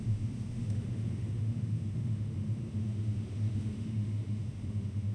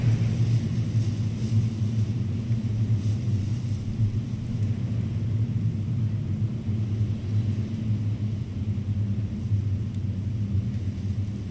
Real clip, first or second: second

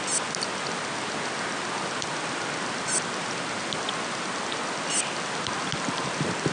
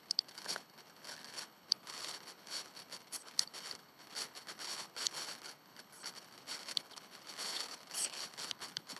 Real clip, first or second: first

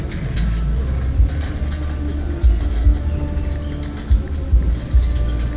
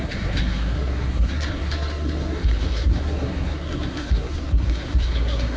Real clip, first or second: first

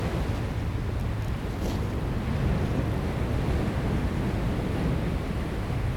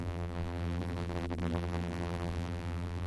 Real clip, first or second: first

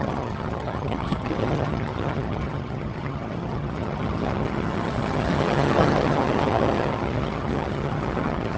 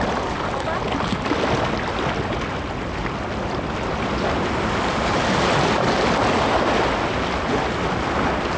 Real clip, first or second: second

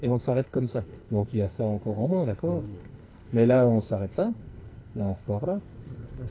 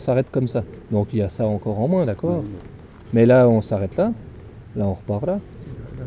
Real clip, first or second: second